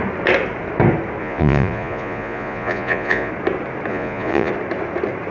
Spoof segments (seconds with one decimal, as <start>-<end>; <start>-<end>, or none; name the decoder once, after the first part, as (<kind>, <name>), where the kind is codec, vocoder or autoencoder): 1.2-3.3 (vocoder, Vocos); 3.9-4.5